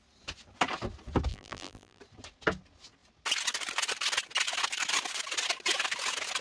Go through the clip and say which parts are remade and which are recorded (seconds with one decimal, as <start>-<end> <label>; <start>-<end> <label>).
0.0-1.3 recorded; 1.3-2.0 remade; 2.0-6.4 recorded